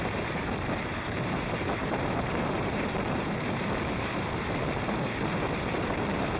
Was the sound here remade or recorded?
remade